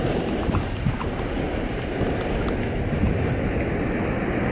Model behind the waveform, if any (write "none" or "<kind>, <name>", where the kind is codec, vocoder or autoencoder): none